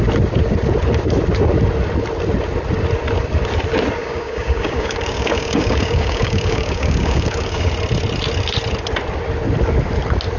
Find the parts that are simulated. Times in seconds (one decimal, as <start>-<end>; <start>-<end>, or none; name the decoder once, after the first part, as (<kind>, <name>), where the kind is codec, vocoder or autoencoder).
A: 4.0-7.7 (codec, DAC)